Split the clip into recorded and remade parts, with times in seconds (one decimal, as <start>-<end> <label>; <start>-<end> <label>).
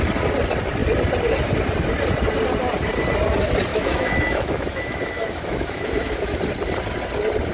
0.0-3.7 recorded; 3.7-6.4 remade; 6.4-7.5 recorded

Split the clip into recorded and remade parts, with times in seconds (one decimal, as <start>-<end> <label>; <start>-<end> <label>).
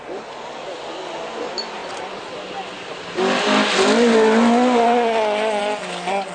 0.0-6.3 recorded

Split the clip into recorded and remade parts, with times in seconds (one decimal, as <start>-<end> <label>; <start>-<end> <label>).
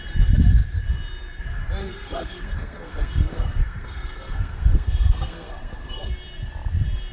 0.0-1.8 recorded; 1.8-6.1 remade; 6.1-7.1 recorded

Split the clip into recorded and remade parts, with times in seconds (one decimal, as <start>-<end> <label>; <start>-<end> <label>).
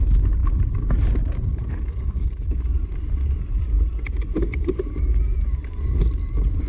0.0-6.7 remade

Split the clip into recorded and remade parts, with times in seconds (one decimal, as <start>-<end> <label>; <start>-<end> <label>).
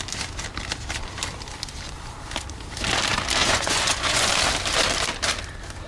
0.0-3.4 recorded; 3.4-4.3 remade; 4.3-5.9 recorded